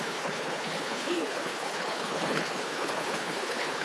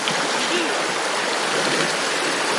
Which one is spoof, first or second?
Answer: first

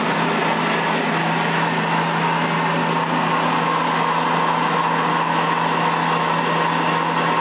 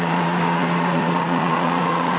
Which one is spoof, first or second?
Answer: second